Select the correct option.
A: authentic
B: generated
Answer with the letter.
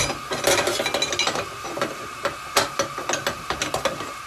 A